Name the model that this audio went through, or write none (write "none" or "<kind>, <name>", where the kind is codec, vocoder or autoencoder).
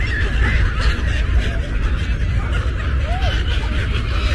none